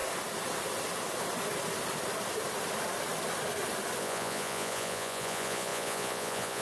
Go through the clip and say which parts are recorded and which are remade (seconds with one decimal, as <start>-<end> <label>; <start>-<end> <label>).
0.0-4.0 recorded; 4.0-6.6 remade